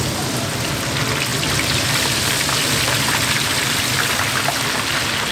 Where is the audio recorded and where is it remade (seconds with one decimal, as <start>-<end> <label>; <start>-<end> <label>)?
0.0-5.3 recorded